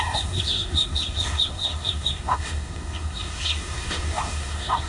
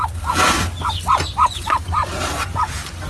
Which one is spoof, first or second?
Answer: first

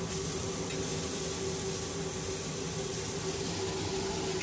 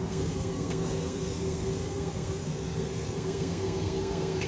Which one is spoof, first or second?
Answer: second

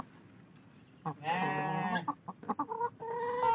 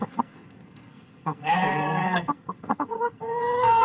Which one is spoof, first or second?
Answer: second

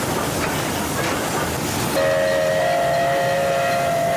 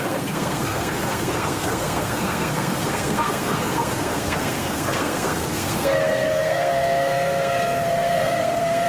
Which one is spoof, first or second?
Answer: second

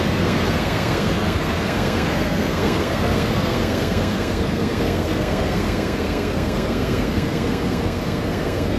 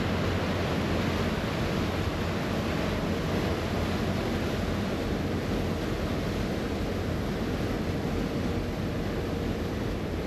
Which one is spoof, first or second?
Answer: first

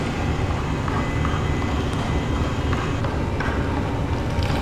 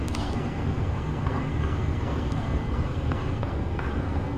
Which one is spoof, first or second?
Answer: second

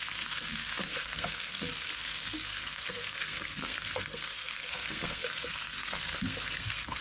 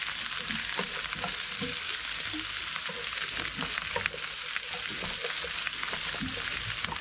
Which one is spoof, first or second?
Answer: first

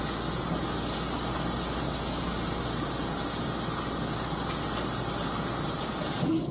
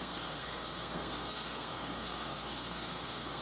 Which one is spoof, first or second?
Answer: second